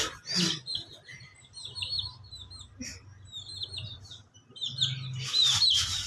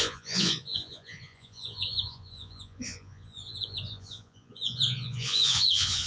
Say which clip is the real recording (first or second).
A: first